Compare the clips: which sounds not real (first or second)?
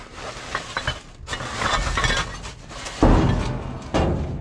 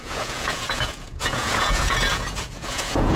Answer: second